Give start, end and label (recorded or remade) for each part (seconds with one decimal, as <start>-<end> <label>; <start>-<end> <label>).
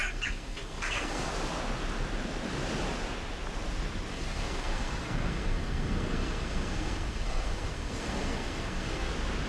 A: 0.0-1.3 remade; 1.3-4.1 recorded; 4.1-9.1 remade; 9.1-9.5 recorded